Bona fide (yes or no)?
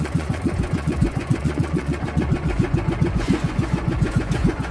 no